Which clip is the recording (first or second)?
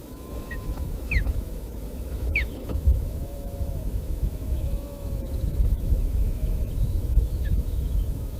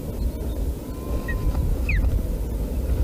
second